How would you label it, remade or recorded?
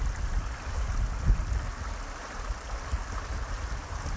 recorded